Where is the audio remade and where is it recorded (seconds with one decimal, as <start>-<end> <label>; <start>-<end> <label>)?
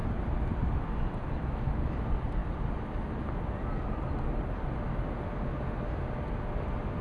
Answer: 0.0-0.6 remade; 0.6-7.0 recorded